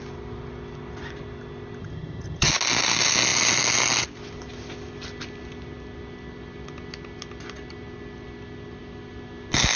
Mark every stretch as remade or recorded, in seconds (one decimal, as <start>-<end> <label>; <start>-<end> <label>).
0.0-1.8 recorded; 1.8-2.5 remade; 2.5-9.8 recorded